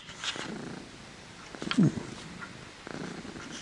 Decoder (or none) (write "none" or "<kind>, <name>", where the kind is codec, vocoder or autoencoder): none